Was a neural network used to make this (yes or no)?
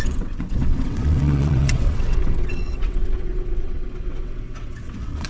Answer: yes